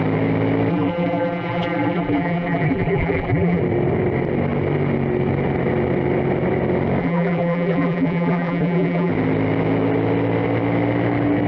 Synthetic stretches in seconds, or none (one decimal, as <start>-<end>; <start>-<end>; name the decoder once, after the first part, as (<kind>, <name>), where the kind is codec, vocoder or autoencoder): 0.7-3.6 (vocoder, BigVGAN v2); 7.0-9.1